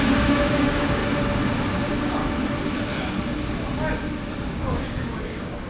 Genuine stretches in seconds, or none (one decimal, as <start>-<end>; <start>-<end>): 1.0-1.7; 2.2-4.4